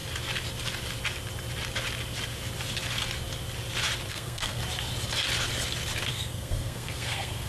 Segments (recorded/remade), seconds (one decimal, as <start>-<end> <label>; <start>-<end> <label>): 0.0-4.1 recorded; 4.1-4.6 remade; 4.6-6.1 recorded; 6.1-7.5 remade